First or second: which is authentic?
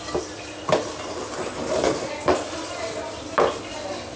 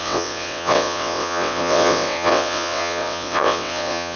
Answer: first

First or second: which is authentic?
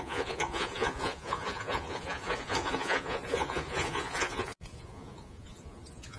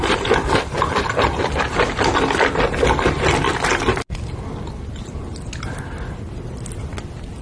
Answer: second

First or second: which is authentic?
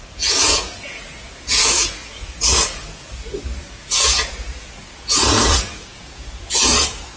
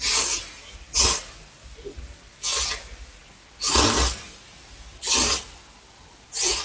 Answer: second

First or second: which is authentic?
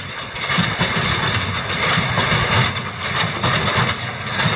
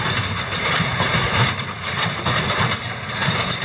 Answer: first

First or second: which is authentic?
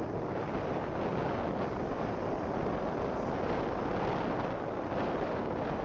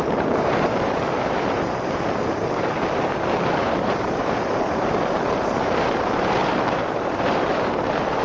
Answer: first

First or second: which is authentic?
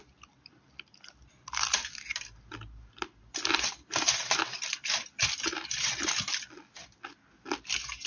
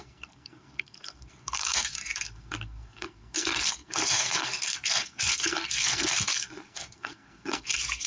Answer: first